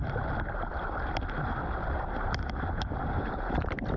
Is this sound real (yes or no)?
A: yes